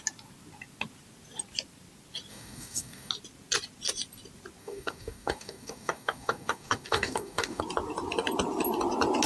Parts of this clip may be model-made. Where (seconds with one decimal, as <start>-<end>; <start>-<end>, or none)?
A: 2.3-3.1; 4.6-7.6